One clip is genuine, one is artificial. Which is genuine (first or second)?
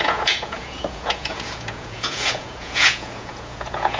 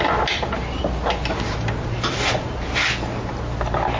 second